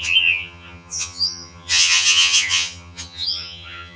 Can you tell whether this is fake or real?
fake